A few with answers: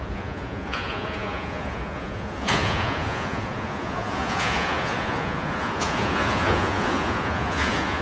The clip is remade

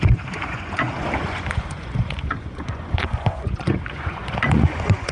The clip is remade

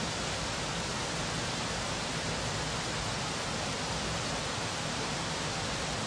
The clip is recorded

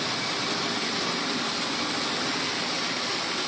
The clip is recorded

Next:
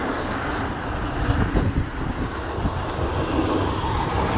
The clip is recorded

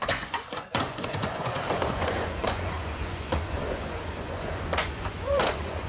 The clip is remade